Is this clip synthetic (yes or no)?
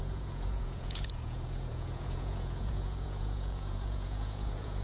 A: yes